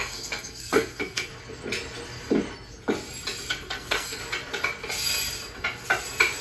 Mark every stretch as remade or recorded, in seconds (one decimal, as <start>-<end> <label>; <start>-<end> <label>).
0.0-1.3 remade; 1.3-3.5 recorded; 3.5-4.2 remade; 4.2-6.4 recorded